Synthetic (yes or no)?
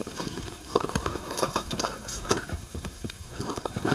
yes